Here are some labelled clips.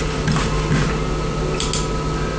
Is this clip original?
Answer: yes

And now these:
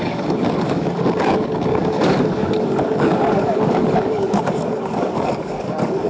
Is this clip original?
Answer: no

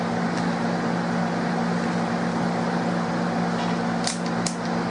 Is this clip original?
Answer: yes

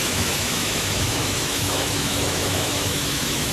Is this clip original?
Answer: no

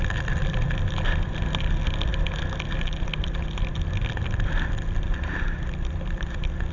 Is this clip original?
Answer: yes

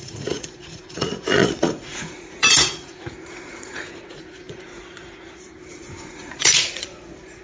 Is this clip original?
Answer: no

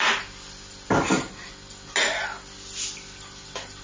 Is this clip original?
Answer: yes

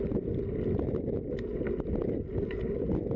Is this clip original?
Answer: yes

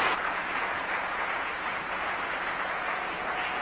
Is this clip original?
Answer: no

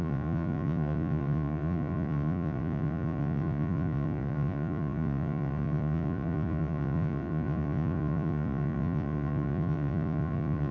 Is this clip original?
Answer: no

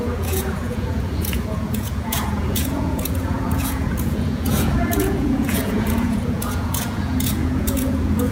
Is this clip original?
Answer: no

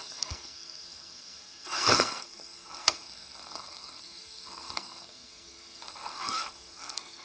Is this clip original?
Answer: no